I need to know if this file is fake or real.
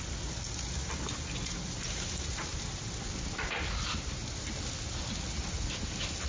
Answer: real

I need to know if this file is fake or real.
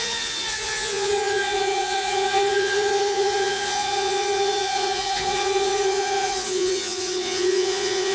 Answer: fake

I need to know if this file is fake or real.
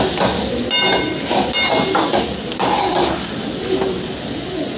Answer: real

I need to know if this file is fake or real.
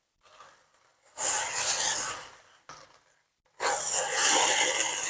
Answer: real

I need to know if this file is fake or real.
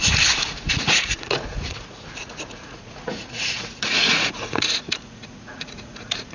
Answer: fake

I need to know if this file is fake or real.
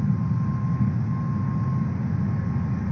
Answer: real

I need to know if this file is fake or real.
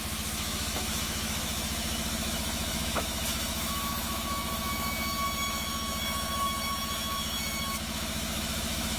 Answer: fake